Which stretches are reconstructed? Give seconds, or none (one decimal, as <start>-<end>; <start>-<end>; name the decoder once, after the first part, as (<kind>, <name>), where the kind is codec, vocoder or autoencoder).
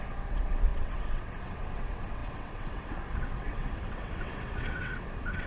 0.0-5.5 (vocoder, WaveNeXt)